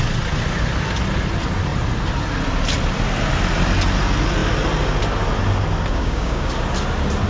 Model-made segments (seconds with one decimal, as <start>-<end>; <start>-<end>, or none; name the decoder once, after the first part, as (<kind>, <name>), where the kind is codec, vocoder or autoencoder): 5.9-6.5 (codec, DAC)